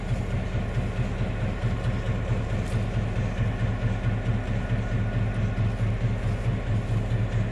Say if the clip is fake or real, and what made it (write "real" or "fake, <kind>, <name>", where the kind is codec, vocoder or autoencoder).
real